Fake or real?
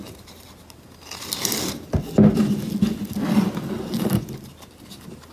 real